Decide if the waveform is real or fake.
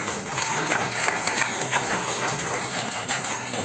fake